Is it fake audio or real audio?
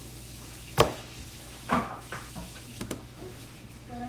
fake